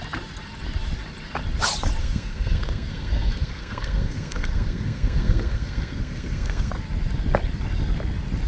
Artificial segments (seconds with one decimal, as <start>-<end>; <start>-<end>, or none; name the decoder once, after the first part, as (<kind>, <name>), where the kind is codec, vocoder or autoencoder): 2.0-6.7 (codec, SNAC)